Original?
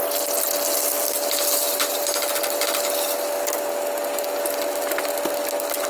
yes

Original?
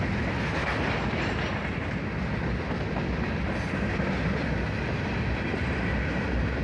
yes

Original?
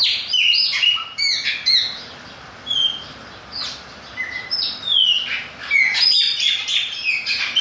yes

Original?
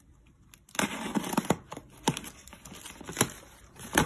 yes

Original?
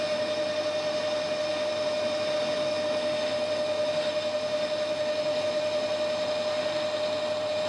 yes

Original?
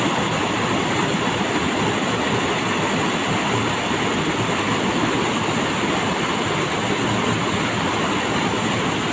yes